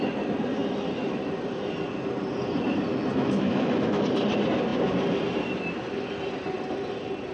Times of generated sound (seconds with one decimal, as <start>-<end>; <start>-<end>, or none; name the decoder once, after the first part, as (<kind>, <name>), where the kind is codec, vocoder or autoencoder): 2.9-4.0 (autoencoder, DAC-VAE)